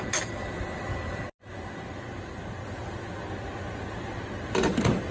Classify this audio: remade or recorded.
recorded